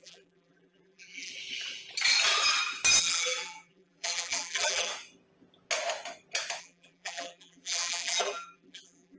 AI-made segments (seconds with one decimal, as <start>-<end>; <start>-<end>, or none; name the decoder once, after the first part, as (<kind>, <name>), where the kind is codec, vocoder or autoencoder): 0.0-1.3 (vocoder, BigVGAN v2); 3.0-4.9; 6.6-9.2